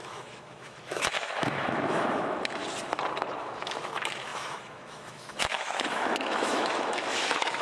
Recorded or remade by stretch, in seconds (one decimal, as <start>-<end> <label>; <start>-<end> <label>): 0.0-2.6 remade; 2.6-3.4 recorded; 3.4-7.6 remade